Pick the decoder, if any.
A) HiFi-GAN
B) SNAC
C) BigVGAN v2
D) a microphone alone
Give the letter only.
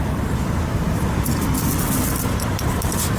D